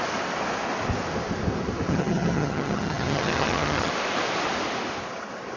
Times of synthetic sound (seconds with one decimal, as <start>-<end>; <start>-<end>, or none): 1.9-3.9

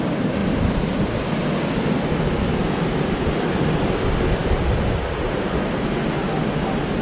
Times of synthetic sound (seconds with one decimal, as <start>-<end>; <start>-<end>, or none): none

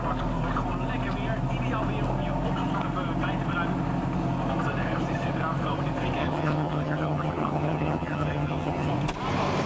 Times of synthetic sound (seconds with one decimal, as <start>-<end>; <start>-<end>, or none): 6.2-8.9

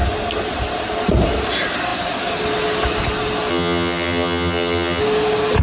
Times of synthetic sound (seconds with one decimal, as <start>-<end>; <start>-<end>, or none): 3.5-5.0

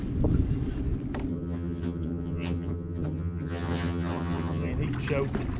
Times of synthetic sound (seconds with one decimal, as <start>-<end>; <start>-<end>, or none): 1.3-4.7

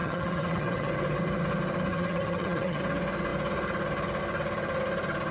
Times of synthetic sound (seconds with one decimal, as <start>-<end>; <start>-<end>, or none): 0.0-0.9; 1.9-2.8